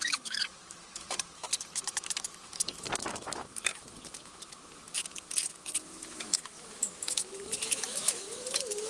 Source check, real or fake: fake